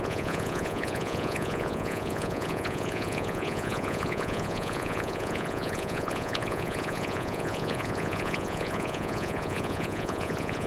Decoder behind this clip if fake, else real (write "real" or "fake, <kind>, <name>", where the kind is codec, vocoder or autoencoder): fake, vocoder, Vocos